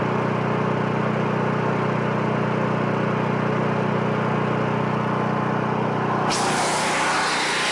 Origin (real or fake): real